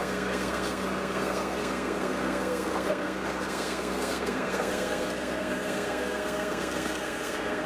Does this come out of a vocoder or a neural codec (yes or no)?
yes